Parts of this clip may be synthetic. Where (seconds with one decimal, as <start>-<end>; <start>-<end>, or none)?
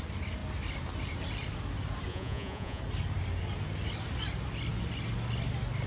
2.1-2.8